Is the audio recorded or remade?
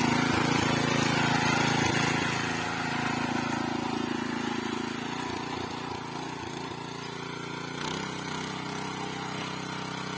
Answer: recorded